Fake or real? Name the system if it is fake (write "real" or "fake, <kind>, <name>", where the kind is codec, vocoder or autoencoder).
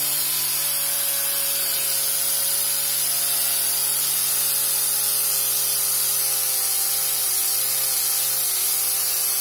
real